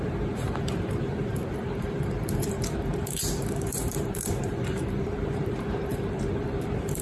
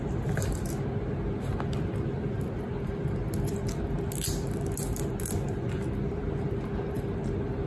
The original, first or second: second